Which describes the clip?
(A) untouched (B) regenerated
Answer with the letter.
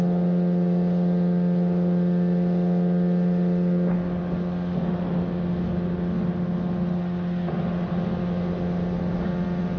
A